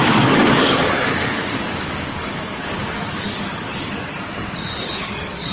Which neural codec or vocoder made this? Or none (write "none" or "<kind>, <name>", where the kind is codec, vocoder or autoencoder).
codec, DAC